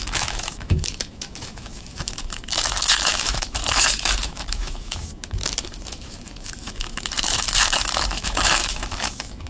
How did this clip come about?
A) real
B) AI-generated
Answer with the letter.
B